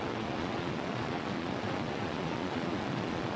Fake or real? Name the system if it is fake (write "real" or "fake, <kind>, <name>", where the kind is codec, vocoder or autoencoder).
fake, vocoder, Vocos